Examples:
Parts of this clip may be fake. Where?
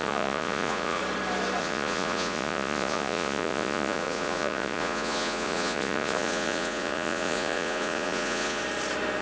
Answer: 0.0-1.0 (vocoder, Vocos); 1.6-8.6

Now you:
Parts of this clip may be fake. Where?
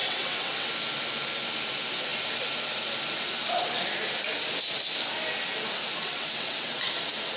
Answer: 0.0-0.7 (vocoder, WaveNeXt); 6.0-6.9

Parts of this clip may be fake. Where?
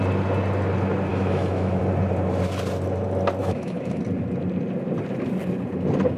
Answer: 1.1-1.8 (autoencoder, DAC-VAE); 3.4-4.0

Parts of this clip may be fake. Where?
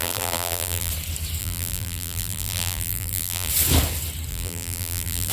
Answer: 0.0-0.9 (vocoder, BigVGAN v2); 1.4-3.5; 4.3-5.3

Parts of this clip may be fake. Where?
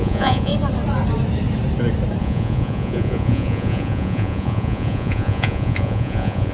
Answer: 0.0-0.5 (vocoder, Vocos); 2.2-6.5